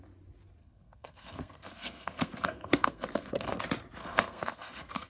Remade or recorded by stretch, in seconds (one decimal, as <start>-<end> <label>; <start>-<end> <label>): 0.0-0.6 recorded; 0.6-3.6 remade; 3.6-4.0 recorded; 4.0-5.1 remade